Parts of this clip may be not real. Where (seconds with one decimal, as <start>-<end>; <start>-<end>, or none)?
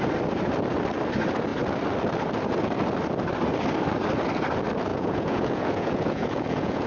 4.9-6.9